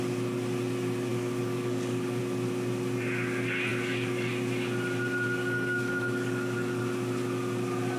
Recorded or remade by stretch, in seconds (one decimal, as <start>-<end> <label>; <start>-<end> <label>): 0.0-1.1 recorded; 1.1-2.2 remade; 2.2-3.7 recorded; 3.7-4.3 remade; 4.3-5.4 recorded; 5.4-6.8 remade; 6.8-8.0 recorded